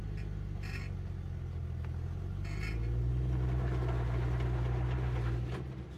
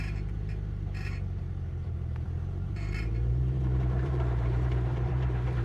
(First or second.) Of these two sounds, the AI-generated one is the second